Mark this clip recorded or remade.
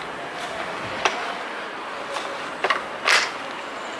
recorded